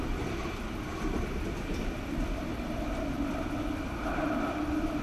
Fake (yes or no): yes